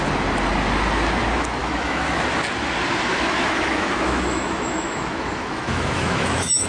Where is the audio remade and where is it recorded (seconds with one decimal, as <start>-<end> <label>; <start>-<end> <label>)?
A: 0.0-1.6 recorded; 1.6-2.3 remade; 2.3-3.1 recorded; 3.1-6.7 remade